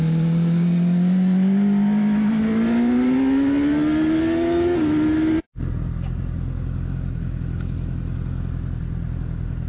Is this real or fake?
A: real